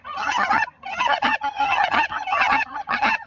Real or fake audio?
fake